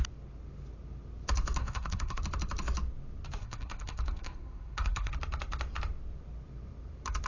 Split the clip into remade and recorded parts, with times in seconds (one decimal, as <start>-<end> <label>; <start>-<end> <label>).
0.0-1.6 recorded; 1.6-2.2 remade; 2.2-3.4 recorded; 3.4-5.1 remade; 5.1-7.3 recorded